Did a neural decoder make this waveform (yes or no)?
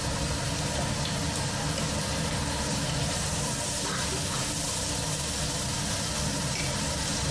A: no